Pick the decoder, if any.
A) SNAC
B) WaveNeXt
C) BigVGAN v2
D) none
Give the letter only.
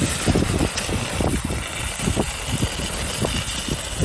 D